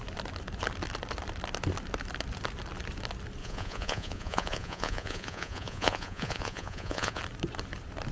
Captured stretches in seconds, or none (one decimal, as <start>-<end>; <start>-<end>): 0.0-3.4; 7.2-8.1